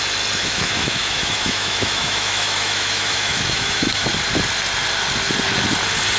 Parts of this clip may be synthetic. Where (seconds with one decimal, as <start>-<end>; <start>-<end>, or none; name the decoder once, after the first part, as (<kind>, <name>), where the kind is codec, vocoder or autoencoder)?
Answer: 0.4-4.1 (autoencoder, DAC-VAE)